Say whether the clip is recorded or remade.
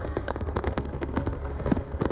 remade